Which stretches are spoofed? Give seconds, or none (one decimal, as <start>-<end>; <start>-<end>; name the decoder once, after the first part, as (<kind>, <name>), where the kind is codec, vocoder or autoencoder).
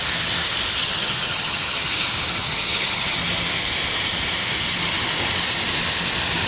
0.8-1.9 (vocoder, HiFi-GAN); 2.4-3.2